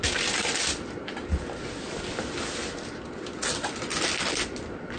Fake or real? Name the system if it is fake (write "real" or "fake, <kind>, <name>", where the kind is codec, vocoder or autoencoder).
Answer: real